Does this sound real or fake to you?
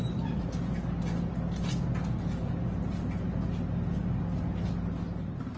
real